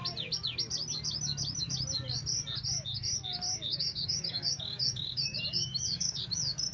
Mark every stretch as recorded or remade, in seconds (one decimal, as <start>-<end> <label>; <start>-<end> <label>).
0.0-3.7 recorded; 3.7-6.2 remade; 6.2-6.7 recorded